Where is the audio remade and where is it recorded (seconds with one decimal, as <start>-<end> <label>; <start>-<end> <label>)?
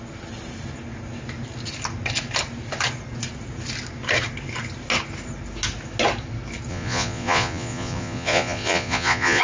0.0-6.7 recorded; 6.7-9.4 remade